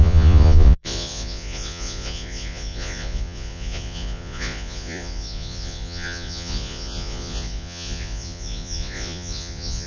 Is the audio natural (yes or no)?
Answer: no